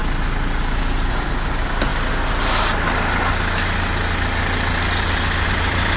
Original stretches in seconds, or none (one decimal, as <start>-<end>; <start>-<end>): 0.0-0.8; 1.9-5.5